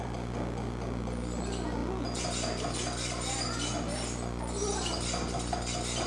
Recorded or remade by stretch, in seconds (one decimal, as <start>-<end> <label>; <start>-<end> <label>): 0.0-6.1 recorded